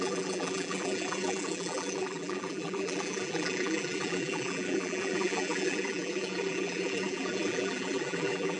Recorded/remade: remade